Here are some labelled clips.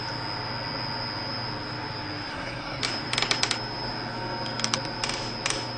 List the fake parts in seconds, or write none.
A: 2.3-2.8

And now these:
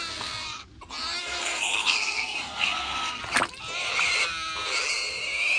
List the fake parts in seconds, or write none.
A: 0.0-0.6; 1.2-3.2

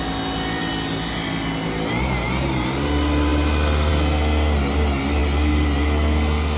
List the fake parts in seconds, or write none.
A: none

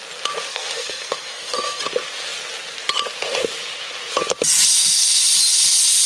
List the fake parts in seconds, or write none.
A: 0.5-1.8; 4.7-5.2

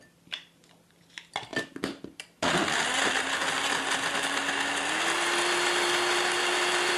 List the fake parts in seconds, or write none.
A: none